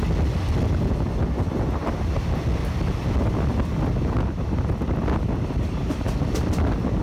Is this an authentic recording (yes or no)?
yes